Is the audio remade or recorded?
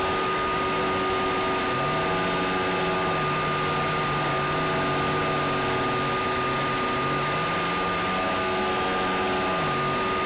recorded